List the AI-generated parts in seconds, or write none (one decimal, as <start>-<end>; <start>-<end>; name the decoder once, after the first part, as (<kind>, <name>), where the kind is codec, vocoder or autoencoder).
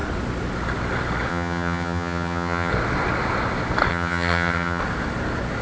1.3-2.7 (vocoder, HiFi-GAN); 3.9-4.8